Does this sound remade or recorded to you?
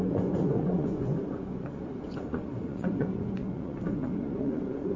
remade